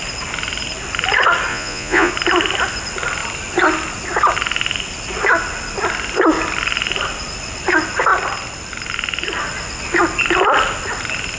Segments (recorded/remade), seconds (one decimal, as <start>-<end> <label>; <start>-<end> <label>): 0.0-1.5 recorded; 1.5-2.1 remade; 2.1-11.4 recorded